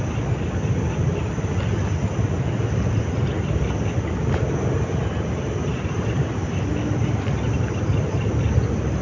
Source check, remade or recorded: recorded